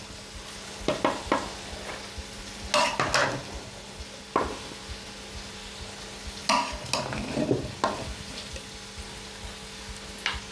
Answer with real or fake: real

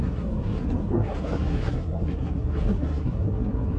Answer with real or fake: fake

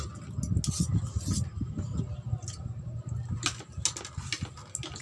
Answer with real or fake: real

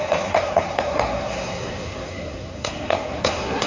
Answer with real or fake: fake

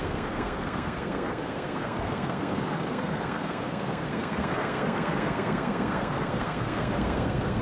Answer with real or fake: fake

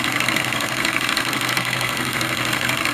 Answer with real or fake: fake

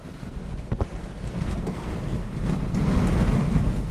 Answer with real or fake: fake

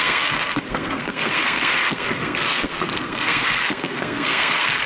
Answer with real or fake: fake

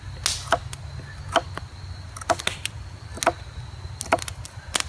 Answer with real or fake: real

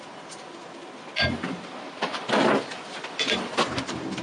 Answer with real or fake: real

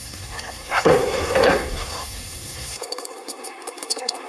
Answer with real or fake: fake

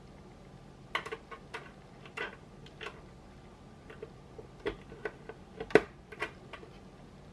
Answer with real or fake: real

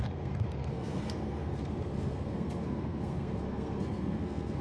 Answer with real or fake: fake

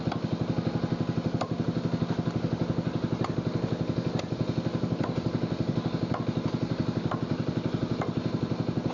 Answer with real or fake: real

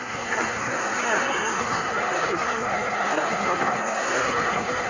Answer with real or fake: fake